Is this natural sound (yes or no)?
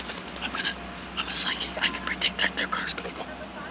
yes